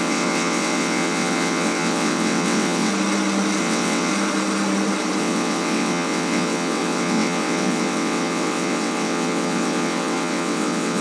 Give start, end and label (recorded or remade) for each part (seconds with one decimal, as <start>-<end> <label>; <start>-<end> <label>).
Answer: 0.0-2.9 remade; 2.9-3.6 recorded; 3.6-4.1 remade; 4.1-5.2 recorded; 5.2-11.0 remade